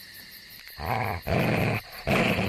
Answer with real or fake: real